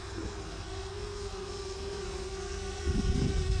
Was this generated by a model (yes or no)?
yes